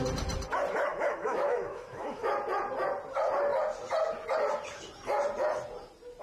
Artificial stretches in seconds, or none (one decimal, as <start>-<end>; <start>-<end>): 0.9-2.3